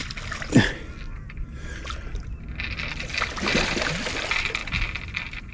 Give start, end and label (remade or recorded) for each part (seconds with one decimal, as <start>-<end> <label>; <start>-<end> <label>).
0.0-5.5 recorded